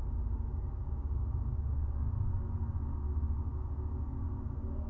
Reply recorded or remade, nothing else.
recorded